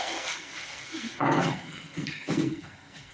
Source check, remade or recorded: remade